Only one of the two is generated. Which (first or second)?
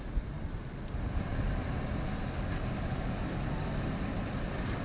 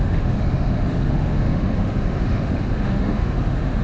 second